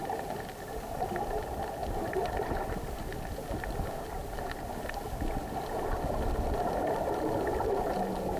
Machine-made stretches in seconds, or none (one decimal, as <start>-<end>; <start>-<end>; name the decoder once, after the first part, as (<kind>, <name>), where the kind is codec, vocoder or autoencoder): none